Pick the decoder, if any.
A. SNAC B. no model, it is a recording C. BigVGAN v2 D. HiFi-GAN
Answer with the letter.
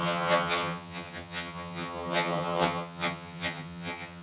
D